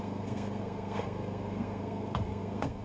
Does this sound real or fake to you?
fake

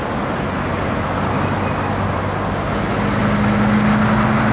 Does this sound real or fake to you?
real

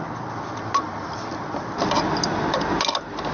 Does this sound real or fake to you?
real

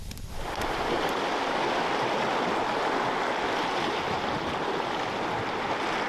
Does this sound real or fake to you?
real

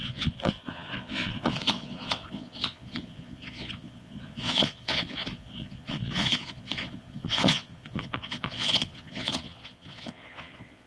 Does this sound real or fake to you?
fake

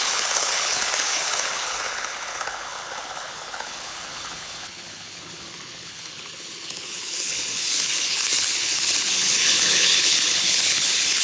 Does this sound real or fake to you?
fake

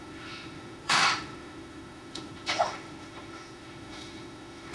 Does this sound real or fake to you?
fake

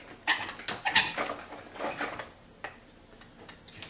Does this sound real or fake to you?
real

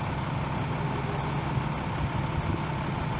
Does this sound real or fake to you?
real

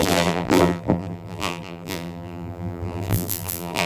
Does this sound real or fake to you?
fake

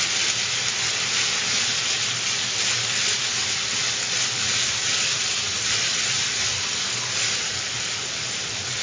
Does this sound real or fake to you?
real